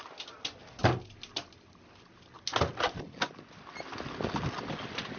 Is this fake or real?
real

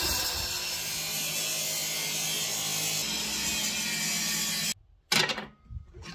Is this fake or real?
real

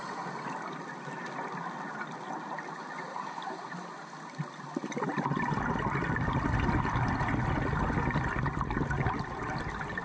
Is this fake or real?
real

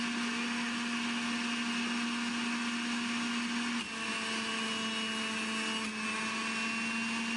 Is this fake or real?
real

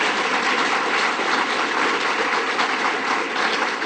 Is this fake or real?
real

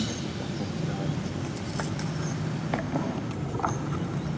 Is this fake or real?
real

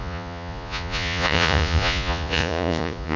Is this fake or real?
fake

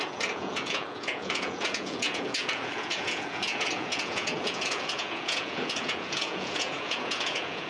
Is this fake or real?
fake